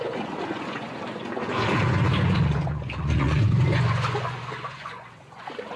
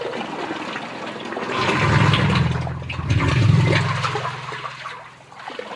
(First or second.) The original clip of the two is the second